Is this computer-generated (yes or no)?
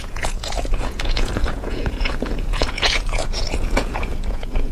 yes